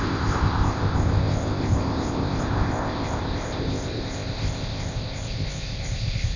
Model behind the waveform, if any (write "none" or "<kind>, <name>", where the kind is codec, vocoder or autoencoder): codec, ZipCodec